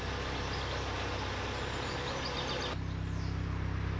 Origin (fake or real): real